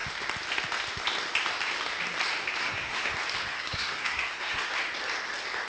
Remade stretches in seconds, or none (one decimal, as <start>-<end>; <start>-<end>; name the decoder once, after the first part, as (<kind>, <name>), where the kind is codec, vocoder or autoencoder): 2.6-3.1 (codec, SNAC); 3.5-4.7